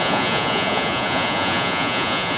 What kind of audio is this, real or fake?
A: fake